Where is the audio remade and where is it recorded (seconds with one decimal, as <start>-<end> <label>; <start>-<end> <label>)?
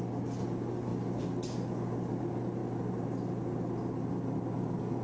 0.0-5.0 recorded